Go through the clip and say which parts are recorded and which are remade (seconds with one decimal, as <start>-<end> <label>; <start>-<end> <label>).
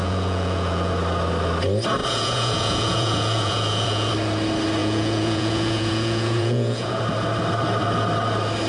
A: 0.0-0.9 remade; 0.9-2.0 recorded; 2.0-4.1 remade; 4.1-4.8 recorded; 4.8-7.0 remade; 7.0-8.7 recorded